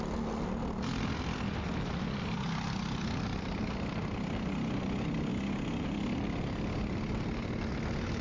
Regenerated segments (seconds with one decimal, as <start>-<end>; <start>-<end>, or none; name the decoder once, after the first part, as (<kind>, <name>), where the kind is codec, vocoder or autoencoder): none